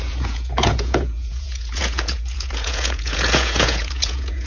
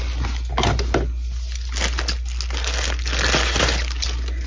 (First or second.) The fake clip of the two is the first